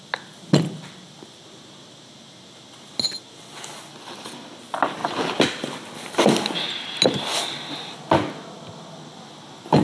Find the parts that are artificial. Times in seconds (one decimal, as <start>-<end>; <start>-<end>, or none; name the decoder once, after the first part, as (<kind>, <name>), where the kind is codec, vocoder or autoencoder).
none